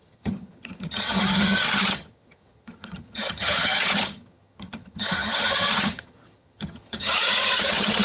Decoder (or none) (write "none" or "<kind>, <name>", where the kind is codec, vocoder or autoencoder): vocoder, HiFi-GAN